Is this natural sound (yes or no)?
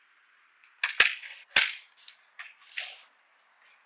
yes